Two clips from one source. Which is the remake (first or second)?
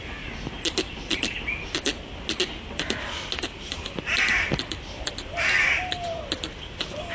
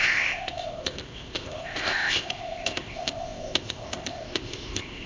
second